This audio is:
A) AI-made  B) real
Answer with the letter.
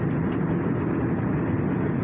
B